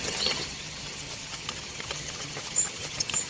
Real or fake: fake